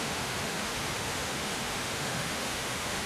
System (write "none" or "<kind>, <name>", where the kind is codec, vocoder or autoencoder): autoencoder, DAC-VAE